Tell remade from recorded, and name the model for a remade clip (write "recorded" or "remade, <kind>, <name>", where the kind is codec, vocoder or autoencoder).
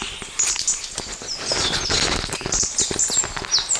recorded